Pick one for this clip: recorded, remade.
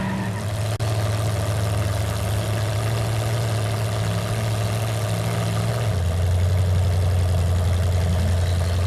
recorded